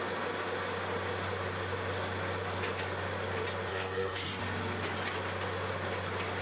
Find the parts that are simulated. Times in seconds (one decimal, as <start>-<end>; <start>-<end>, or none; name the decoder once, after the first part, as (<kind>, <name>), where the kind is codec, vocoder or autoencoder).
3.7-4.4 (codec, SNAC)